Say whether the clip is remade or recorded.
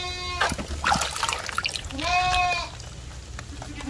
recorded